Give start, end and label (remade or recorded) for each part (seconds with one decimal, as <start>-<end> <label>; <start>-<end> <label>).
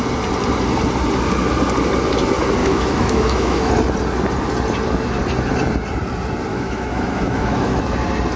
0.0-2.6 recorded; 2.6-3.7 remade; 3.7-6.5 recorded; 6.5-7.8 remade; 7.8-8.4 recorded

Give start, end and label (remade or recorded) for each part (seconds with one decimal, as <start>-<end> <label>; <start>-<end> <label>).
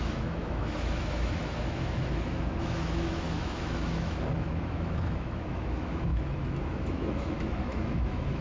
0.0-8.4 remade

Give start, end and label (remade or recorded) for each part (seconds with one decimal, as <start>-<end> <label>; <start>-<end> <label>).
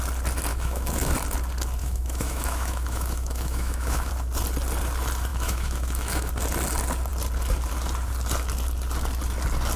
0.0-0.5 recorded; 0.5-1.1 remade; 1.1-1.8 recorded; 1.8-4.1 remade; 4.1-5.3 recorded; 5.3-6.3 remade; 6.3-9.8 recorded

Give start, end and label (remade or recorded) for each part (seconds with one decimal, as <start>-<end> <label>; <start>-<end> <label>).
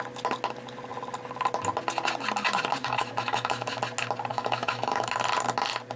0.0-2.8 recorded; 2.8-3.8 remade; 3.8-4.3 recorded; 4.3-5.1 remade; 5.1-6.0 recorded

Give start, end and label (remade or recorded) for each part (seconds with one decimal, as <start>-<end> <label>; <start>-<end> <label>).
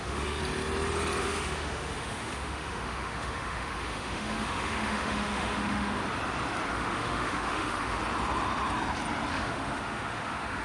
0.0-0.4 remade; 0.4-1.2 recorded; 1.2-6.0 remade; 6.0-6.7 recorded; 6.7-8.0 remade; 8.0-9.3 recorded; 9.3-10.6 remade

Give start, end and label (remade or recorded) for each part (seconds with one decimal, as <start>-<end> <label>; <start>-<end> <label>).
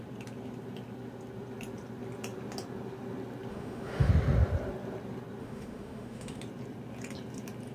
0.0-3.5 recorded; 3.5-4.1 remade; 4.1-5.4 recorded; 5.4-6.4 remade; 6.4-7.7 recorded